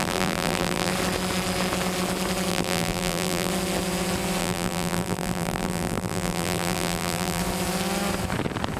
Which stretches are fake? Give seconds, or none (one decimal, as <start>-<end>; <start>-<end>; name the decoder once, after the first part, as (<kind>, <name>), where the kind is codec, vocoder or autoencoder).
0.0-0.9 (vocoder, BigVGAN v2); 2.5-3.5; 4.4-7.4